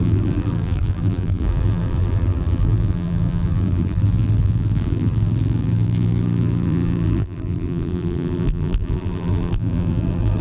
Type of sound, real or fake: fake